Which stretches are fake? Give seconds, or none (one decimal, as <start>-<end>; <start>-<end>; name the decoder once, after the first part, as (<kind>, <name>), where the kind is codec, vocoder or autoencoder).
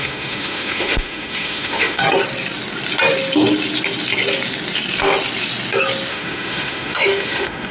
0.0-2.0 (autoencoder, DAC-VAE); 6.1-7.7